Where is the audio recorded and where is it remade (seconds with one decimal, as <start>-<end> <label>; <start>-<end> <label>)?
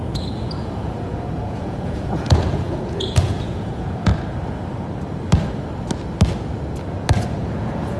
0.0-4.1 remade; 4.1-7.2 recorded; 7.2-8.0 remade